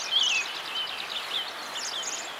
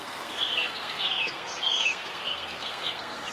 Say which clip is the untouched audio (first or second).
first